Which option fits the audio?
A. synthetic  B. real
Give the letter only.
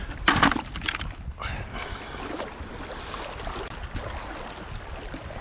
B